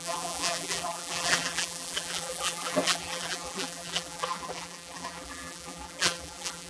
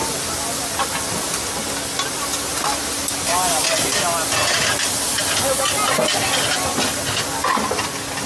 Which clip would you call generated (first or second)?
first